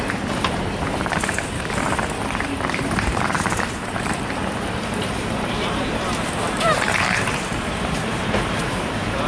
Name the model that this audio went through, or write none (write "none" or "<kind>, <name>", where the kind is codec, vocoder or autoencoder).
vocoder, BigVGAN v2